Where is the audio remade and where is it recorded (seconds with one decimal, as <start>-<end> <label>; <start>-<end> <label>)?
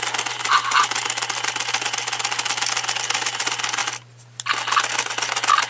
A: 0.0-5.7 recorded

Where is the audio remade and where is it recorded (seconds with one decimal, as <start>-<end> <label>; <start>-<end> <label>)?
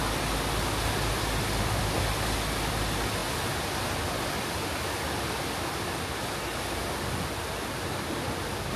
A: 0.0-8.8 recorded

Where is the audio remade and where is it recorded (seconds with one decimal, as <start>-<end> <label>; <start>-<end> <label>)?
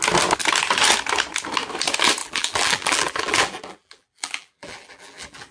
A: 0.0-2.2 recorded; 2.2-5.5 remade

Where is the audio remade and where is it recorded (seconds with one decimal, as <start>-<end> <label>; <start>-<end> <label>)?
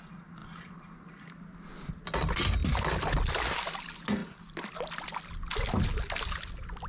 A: 0.0-6.9 recorded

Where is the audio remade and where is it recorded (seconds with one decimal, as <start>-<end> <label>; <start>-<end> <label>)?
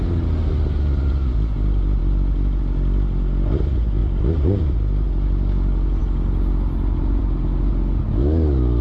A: 0.0-4.0 recorded; 4.0-4.6 remade; 4.6-8.8 recorded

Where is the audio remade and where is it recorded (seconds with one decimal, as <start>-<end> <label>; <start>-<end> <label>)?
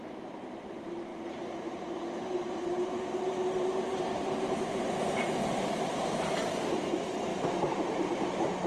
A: 0.0-8.7 remade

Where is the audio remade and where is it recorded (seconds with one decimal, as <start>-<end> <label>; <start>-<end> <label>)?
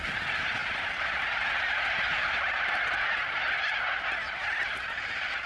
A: 0.0-5.5 recorded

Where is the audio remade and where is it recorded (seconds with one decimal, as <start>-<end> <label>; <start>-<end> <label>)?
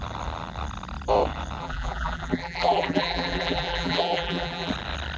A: 0.0-1.6 recorded; 1.6-4.7 remade; 4.7-5.2 recorded